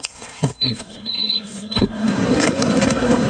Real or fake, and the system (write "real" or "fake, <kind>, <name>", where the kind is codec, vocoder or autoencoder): fake, codec, SNAC